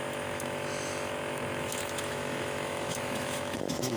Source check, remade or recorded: remade